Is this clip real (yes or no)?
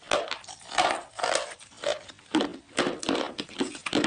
yes